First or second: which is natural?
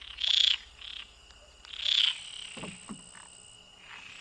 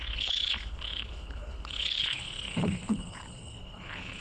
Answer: first